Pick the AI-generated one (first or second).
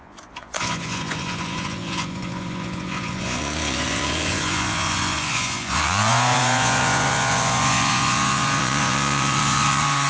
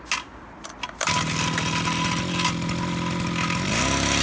first